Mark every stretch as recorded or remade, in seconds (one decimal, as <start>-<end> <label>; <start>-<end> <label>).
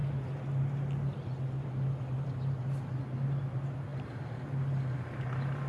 0.0-5.7 recorded